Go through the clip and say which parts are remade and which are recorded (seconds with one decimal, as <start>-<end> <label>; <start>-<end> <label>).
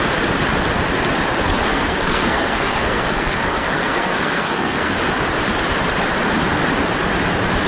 0.0-1.7 recorded; 1.7-5.0 remade; 5.0-7.7 recorded